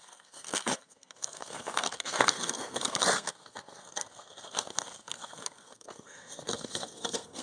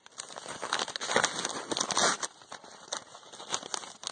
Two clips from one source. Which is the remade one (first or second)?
first